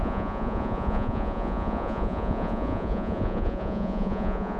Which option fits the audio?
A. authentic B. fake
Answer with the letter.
B